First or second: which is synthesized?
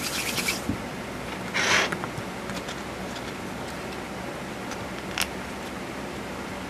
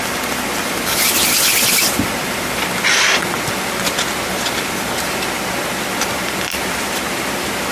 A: second